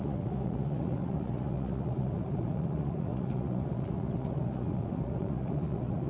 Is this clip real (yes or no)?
no